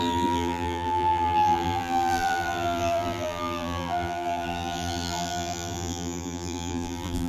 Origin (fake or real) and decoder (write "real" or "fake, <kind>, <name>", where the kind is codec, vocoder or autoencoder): fake, vocoder, BigVGAN v2